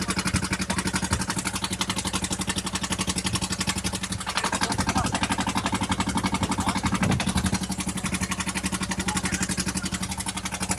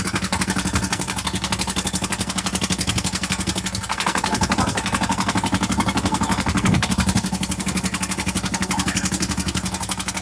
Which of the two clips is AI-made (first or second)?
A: second